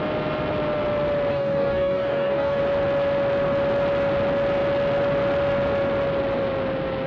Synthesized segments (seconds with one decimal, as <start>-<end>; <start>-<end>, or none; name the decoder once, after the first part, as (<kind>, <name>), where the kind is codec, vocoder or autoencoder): 1.3-2.6 (codec, DAC)